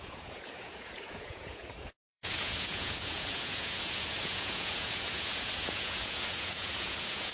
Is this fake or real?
fake